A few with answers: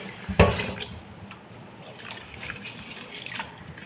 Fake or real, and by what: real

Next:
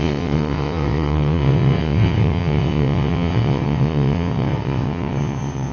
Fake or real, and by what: fake, vocoder, WaveNeXt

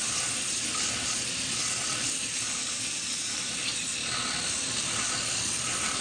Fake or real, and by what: real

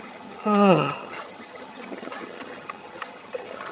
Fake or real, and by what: fake, vocoder, HiFi-GAN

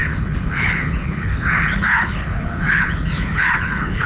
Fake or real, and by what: fake, codec, HILCodec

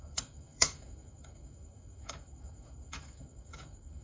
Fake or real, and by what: fake, autoencoder, DAC-VAE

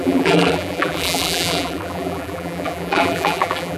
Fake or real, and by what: fake, vocoder, BigVGAN v2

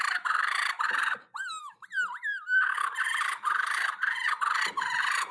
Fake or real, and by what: fake, vocoder, BigVGAN v2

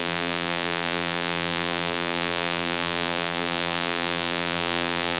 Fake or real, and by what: fake, vocoder, BigVGAN v2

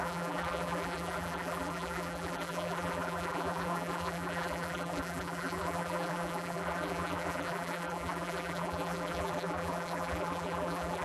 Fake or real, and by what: fake, vocoder, BigVGAN v2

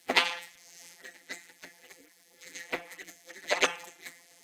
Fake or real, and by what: fake, vocoder, BigVGAN v2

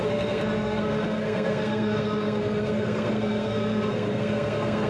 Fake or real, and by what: fake, codec, SNAC